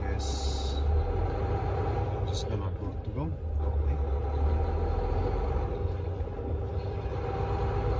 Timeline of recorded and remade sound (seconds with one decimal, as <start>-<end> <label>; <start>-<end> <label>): 0.0-8.0 recorded